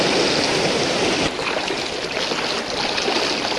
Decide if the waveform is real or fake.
real